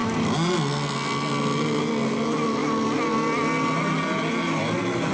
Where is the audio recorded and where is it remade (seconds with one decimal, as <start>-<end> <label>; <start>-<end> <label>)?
0.0-5.1 recorded